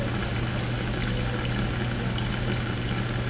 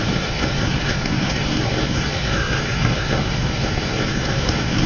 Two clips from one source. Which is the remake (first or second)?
second